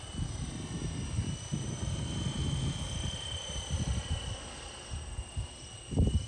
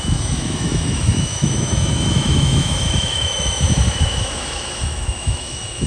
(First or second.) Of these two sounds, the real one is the first